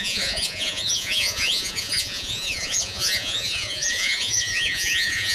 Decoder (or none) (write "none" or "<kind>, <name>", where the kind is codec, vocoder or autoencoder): vocoder, Vocos